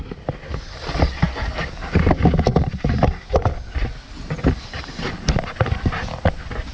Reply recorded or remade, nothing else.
recorded